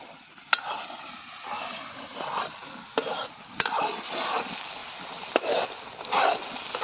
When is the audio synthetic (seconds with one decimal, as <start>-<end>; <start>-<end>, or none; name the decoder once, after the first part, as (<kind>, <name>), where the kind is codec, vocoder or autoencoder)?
4.8-5.6 (vocoder, BigVGAN v2)